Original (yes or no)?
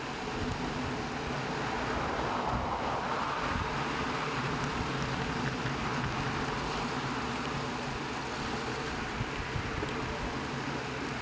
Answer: yes